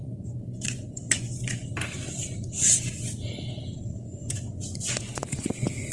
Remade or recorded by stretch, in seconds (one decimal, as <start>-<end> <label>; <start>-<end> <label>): 0.0-1.6 remade; 1.6-3.8 recorded; 3.8-5.9 remade